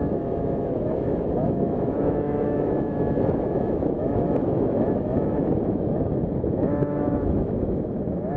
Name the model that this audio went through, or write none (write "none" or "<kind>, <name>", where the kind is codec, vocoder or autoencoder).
autoencoder, DAC-VAE